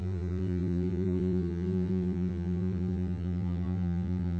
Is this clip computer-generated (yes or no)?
yes